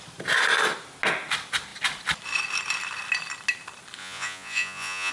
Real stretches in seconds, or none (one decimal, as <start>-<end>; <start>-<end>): 0.0-4.0